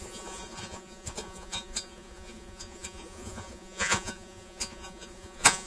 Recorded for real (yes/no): no